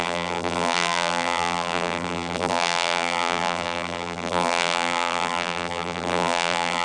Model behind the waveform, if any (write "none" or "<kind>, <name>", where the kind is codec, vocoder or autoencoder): vocoder, BigVGAN v2